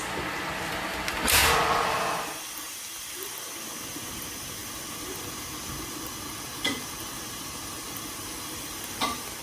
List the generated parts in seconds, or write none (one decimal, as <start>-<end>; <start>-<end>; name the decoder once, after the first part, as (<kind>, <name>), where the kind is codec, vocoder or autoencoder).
none